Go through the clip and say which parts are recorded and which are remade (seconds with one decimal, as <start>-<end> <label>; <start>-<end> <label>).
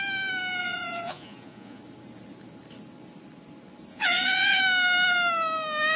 0.0-0.6 recorded; 0.6-1.8 remade; 1.8-3.9 recorded; 3.9-4.6 remade; 4.6-6.0 recorded